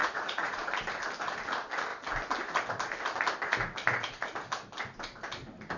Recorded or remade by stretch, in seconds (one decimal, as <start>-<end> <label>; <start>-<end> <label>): 0.0-0.6 remade; 0.6-5.8 recorded